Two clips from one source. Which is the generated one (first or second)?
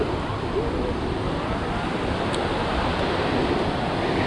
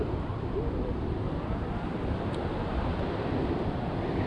second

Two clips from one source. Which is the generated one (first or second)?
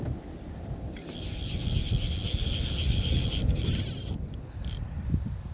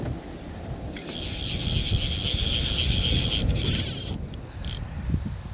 first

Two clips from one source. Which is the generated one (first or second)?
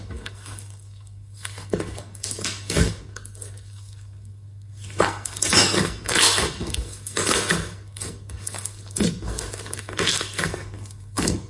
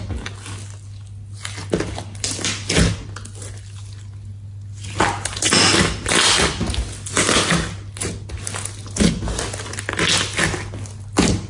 first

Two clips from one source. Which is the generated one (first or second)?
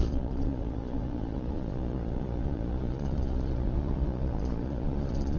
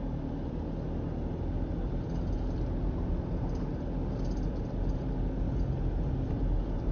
first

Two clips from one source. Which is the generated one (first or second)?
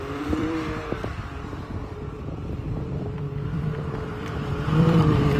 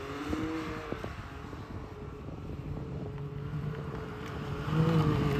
first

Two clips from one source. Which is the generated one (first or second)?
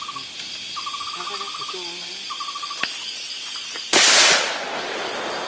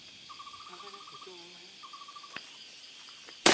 second